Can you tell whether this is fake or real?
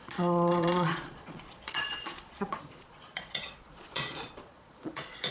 fake